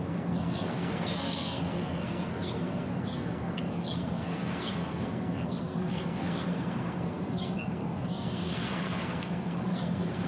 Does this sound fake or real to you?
fake